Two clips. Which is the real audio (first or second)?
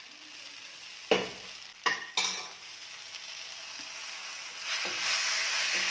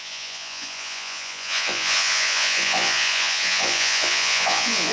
first